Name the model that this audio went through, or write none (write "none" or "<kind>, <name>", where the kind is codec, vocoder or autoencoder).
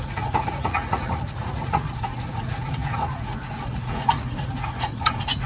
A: vocoder, Vocos